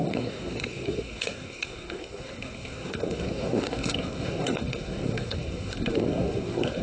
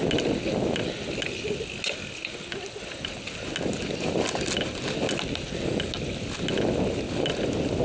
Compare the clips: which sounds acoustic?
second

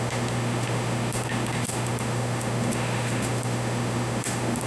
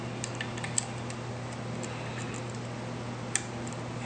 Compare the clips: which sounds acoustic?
second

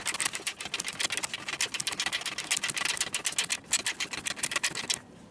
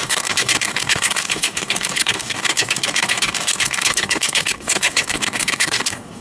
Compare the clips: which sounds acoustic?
first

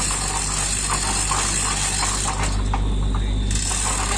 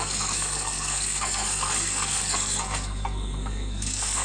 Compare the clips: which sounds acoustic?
first